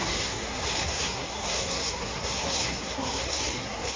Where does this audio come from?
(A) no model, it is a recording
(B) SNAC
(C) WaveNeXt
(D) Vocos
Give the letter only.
B